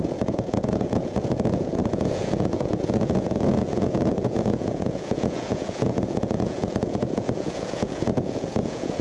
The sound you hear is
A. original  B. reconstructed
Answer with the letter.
B